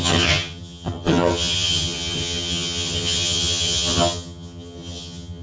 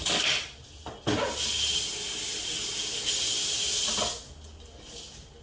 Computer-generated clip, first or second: first